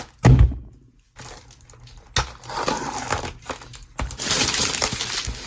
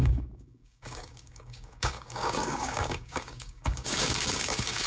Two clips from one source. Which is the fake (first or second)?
second